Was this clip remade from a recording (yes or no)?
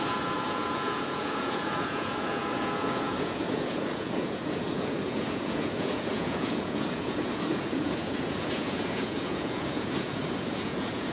yes